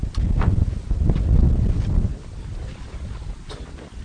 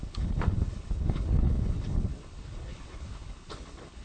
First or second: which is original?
first